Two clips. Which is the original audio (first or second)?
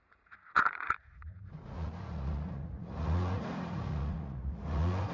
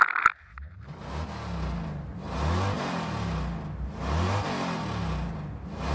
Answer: second